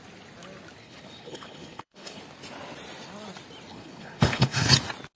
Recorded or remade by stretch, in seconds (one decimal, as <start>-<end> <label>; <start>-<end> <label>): 0.0-0.8 recorded; 0.8-2.2 remade; 2.2-3.7 recorded; 3.7-4.7 remade; 4.7-5.2 recorded